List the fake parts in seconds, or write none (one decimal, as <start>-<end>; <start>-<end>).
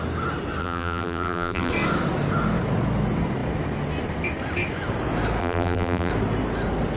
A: 0.6-1.7; 5.4-6.1